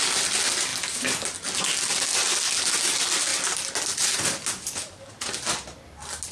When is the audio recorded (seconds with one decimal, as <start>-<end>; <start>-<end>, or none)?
0.0-6.3